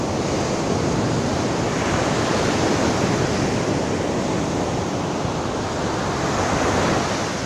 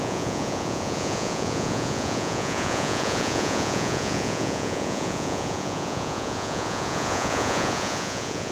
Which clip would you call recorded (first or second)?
first